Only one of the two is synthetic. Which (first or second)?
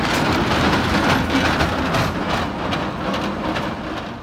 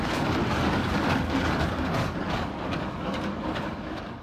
second